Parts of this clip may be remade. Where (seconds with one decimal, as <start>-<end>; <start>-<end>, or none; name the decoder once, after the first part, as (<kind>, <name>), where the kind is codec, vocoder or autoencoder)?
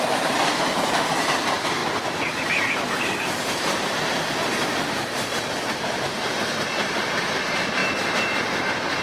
0.0-9.0 (vocoder, BigVGAN v2)